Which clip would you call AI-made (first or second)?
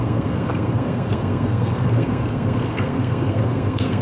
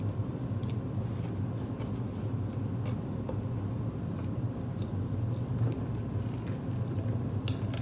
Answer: first